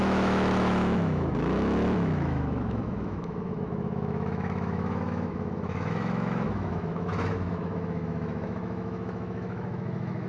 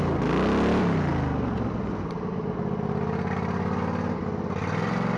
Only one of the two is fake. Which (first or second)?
first